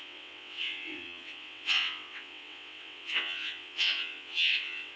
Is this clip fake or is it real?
fake